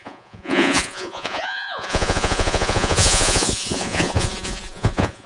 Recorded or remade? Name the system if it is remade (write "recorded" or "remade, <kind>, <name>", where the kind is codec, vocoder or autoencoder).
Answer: remade, vocoder, Vocos